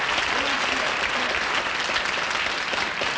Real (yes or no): yes